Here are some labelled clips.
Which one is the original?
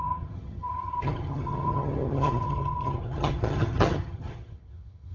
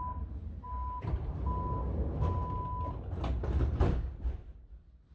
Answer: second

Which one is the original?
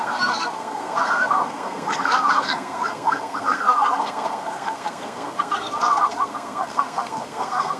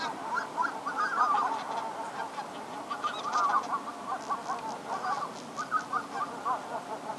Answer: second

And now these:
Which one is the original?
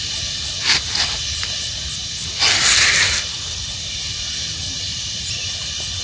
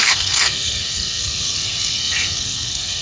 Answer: first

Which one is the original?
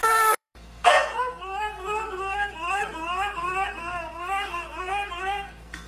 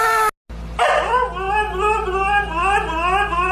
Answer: second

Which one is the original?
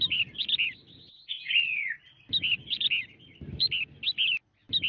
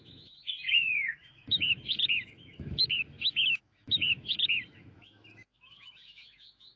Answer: first